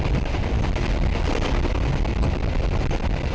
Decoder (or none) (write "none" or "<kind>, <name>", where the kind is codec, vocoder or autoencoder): none